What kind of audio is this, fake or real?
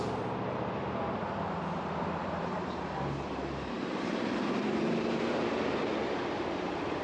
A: fake